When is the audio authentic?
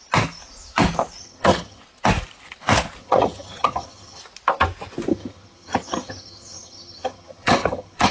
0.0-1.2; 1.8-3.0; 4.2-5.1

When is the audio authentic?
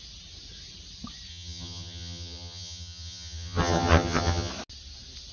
0.0-1.3; 4.5-5.3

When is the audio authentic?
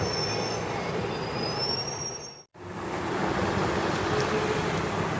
0.0-5.2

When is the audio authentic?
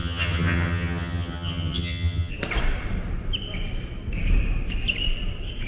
2.3-5.7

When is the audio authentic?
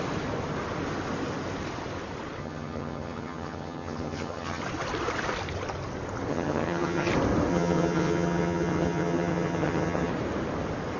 0.0-2.4; 4.6-6.3; 7.1-7.5; 10.1-11.0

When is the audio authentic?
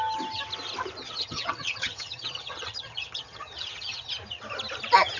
0.0-1.0; 4.1-5.2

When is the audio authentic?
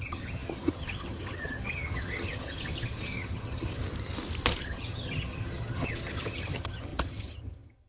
3.8-4.6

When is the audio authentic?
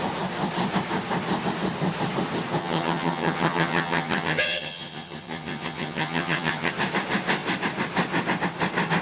0.0-2.6; 6.7-9.0